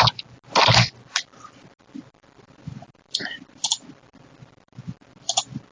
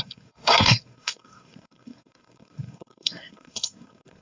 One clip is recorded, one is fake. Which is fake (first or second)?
second